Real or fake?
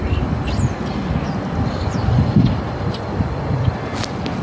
real